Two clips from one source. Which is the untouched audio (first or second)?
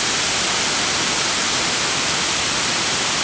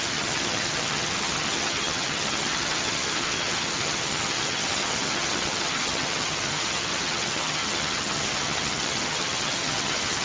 first